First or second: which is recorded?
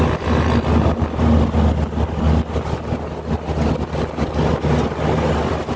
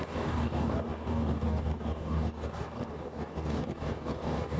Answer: first